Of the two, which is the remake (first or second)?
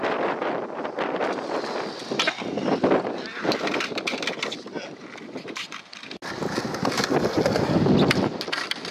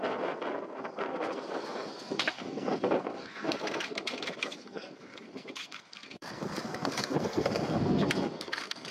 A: second